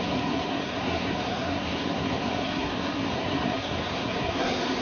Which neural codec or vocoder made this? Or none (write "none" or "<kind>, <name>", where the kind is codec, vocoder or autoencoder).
codec, SNAC